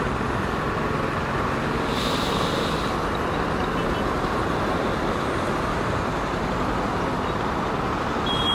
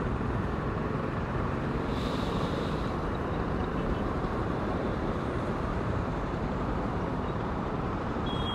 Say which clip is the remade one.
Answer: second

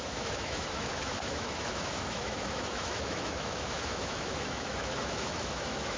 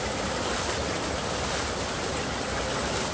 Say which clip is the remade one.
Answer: first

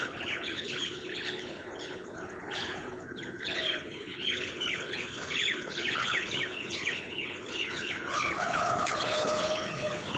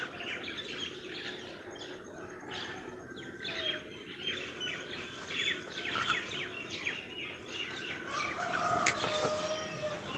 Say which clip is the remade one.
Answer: first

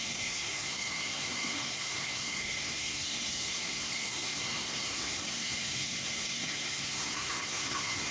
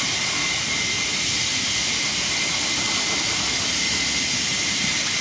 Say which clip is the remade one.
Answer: first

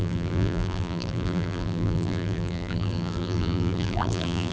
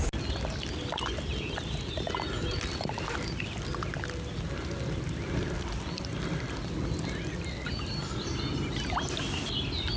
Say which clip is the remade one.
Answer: first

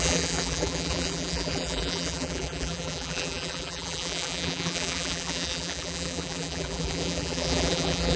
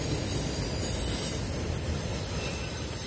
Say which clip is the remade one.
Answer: first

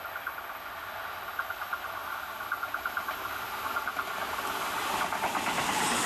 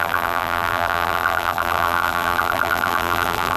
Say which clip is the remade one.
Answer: second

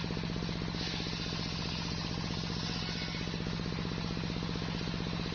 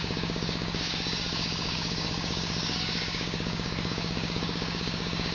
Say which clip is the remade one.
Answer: second